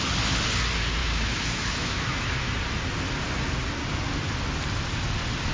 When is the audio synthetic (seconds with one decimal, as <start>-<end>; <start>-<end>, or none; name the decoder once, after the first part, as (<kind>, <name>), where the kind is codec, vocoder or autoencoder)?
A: 1.0-2.5 (autoencoder, DAC-VAE)